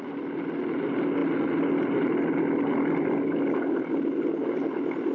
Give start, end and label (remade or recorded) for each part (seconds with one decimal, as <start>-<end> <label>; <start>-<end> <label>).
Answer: 0.0-5.1 recorded